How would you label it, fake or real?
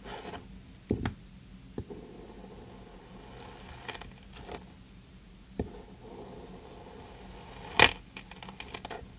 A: real